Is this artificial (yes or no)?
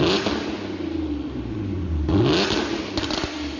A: no